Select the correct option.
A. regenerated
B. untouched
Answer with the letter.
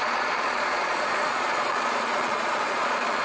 A